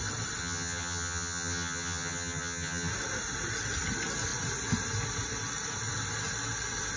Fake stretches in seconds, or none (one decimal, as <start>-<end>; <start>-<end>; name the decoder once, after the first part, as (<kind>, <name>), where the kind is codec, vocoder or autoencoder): 0.4-2.9 (vocoder, HiFi-GAN)